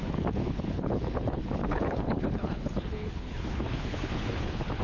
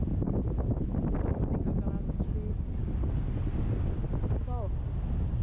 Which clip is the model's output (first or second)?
first